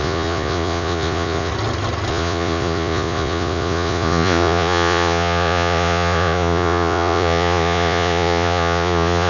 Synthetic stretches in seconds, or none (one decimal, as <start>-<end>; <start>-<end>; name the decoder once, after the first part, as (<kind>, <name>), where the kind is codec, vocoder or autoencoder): 0.0-1.5 (vocoder, Vocos); 2.1-9.3